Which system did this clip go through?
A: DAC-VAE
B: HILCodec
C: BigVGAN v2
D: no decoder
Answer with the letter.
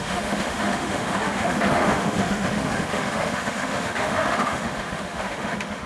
A